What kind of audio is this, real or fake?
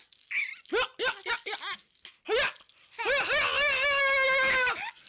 real